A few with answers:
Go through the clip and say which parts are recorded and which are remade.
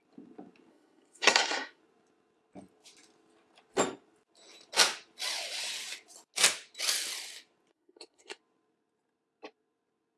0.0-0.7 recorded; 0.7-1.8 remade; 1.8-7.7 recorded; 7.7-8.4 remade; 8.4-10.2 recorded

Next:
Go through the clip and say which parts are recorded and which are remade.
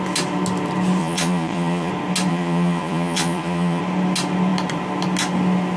0.0-1.0 recorded; 1.0-1.9 remade; 1.9-2.3 recorded; 2.3-3.8 remade; 3.8-5.8 recorded